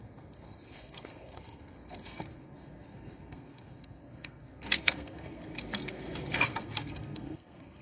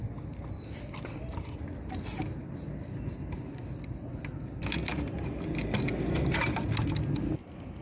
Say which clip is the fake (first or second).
first